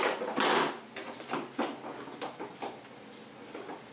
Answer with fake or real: real